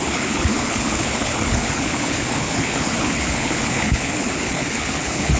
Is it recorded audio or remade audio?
remade